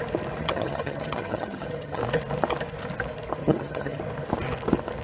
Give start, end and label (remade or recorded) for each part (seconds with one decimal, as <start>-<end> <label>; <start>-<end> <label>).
0.0-0.4 recorded; 0.4-2.0 remade; 2.0-3.4 recorded; 3.4-4.0 remade; 4.0-5.0 recorded